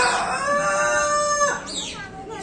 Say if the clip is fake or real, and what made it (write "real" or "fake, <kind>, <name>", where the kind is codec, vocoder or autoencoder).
real